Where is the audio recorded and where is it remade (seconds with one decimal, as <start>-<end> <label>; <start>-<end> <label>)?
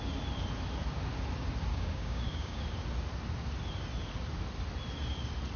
0.0-1.7 recorded; 1.7-2.6 remade; 2.6-5.6 recorded